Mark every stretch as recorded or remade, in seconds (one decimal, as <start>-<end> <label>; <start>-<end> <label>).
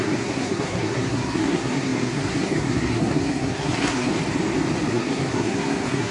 0.0-4.1 remade; 4.1-4.9 recorded; 4.9-6.1 remade